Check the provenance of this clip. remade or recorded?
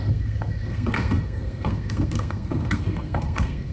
remade